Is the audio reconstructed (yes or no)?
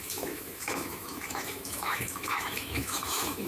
yes